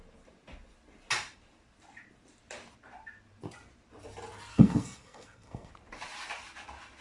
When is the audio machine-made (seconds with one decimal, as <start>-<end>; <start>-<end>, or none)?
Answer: 4.5-5.7

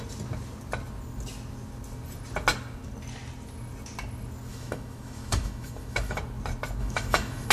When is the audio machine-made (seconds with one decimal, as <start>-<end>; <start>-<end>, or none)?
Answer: 4.5-6.2; 6.8-7.5

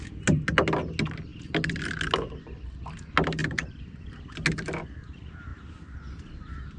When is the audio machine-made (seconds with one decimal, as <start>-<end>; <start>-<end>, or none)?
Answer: none

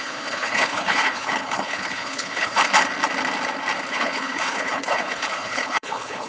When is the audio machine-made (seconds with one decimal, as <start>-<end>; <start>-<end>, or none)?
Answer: 0.0-2.6; 3.9-6.3

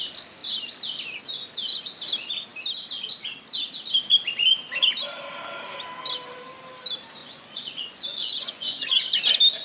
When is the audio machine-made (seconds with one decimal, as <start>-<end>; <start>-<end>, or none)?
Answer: 7.2-8.9

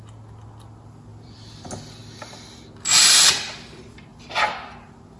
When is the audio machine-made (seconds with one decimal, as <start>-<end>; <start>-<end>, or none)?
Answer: 1.1-1.6; 4.1-5.2

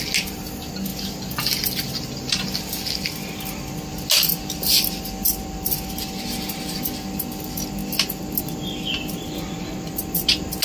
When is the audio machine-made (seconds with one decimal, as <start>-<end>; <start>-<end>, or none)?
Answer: none

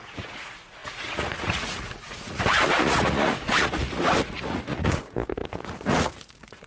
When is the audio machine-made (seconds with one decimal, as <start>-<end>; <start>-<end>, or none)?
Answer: 0.0-6.7